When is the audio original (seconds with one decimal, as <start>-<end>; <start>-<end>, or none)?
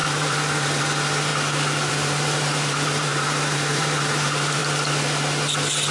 1.3-1.9; 4.6-5.9